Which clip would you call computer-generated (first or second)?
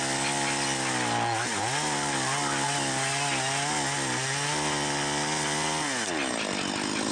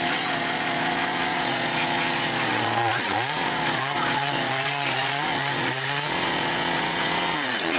second